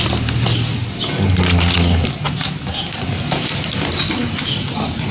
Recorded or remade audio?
recorded